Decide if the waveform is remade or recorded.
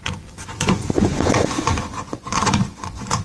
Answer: remade